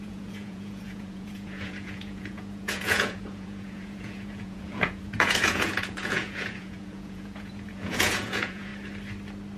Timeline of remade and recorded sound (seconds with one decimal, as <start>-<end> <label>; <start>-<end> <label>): 0.0-8.7 remade; 8.7-9.6 recorded